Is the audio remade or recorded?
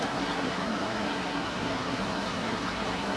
remade